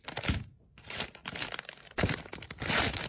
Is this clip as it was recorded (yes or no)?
yes